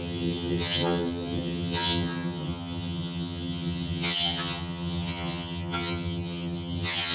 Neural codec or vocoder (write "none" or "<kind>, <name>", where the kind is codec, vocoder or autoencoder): vocoder, HiFi-GAN